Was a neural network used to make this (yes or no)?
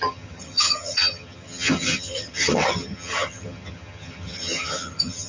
yes